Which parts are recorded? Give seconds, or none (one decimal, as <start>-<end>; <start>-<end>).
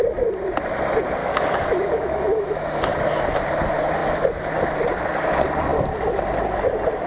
0.0-1.2; 2.8-7.1